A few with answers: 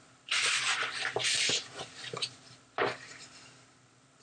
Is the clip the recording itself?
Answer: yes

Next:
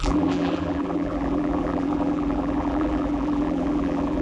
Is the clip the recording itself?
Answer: no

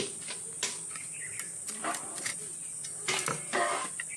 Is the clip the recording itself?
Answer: no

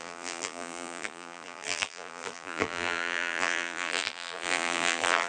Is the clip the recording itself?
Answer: no